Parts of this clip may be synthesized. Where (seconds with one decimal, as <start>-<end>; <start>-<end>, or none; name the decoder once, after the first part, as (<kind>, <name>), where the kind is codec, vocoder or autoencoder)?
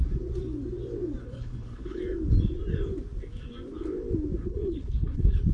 1.2-2.0 (codec, HILCodec); 4.4-5.5